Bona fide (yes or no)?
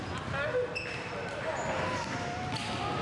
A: yes